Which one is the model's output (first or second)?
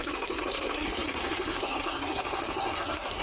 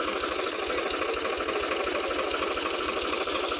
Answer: first